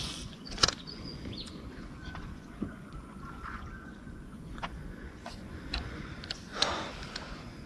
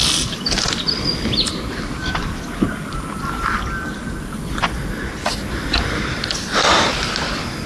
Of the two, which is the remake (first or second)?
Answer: first